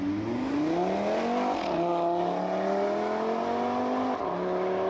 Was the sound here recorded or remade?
recorded